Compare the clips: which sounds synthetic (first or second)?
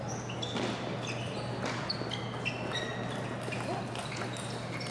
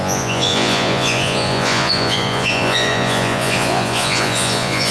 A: second